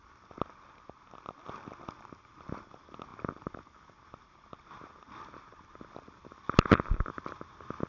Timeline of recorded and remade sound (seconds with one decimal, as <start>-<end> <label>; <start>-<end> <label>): 0.0-7.9 recorded